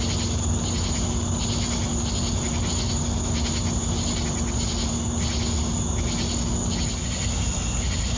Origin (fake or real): real